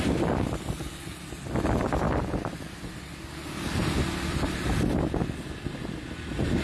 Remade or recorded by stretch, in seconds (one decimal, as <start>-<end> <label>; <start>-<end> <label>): 0.0-4.3 recorded; 4.3-5.0 remade; 5.0-6.6 recorded